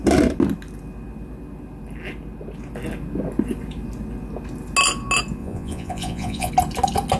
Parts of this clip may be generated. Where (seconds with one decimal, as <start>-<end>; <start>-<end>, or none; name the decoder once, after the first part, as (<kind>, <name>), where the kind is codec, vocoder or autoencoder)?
5.4-6.5 (vocoder, Vocos)